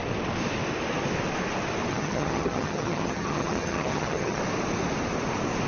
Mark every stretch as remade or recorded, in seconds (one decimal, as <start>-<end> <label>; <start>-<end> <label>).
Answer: 0.0-1.9 recorded; 1.9-4.4 remade; 4.4-5.7 recorded